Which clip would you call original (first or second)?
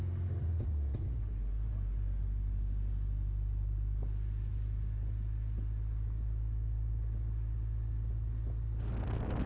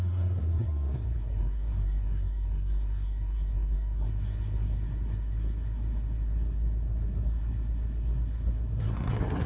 first